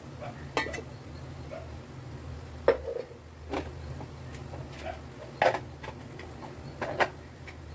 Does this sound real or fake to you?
real